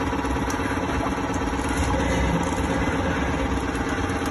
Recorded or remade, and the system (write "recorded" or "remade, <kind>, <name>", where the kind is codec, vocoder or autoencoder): recorded